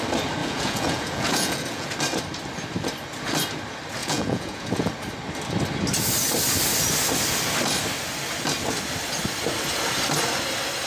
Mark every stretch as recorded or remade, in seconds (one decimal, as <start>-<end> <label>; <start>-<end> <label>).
0.0-0.4 recorded; 0.4-1.9 remade; 1.9-4.0 recorded; 4.0-4.9 remade; 4.9-10.9 recorded